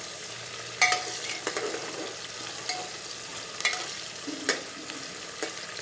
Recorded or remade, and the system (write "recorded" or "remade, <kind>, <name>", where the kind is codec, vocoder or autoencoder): recorded